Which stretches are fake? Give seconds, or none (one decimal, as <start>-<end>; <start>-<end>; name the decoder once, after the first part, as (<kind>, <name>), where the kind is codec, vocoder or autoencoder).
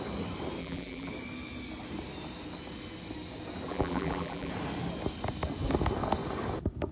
0.6-1.1 (vocoder, BigVGAN v2); 3.7-4.5